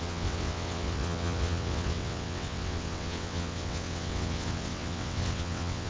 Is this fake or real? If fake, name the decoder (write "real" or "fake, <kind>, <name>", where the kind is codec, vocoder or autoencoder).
fake, vocoder, WaveNeXt